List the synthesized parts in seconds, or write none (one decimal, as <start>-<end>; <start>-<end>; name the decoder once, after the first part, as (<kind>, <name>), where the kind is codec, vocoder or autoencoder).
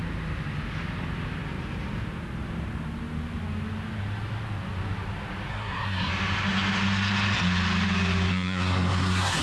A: 5.5-6.1 (codec, SNAC); 8.3-9.4